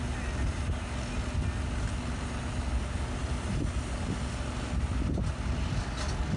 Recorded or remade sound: recorded